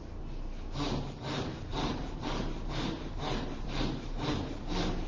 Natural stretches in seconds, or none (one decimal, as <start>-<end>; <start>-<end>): 0.0-1.7; 3.8-5.1